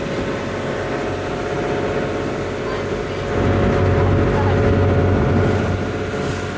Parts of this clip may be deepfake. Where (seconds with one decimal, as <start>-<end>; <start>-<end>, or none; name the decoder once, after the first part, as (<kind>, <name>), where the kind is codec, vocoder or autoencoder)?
none